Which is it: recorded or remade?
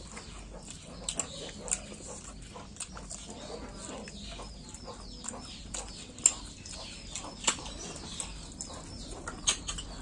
recorded